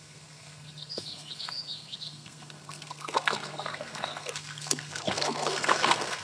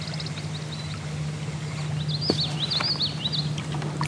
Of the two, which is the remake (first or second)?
first